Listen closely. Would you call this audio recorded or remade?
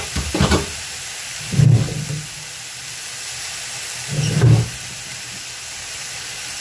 recorded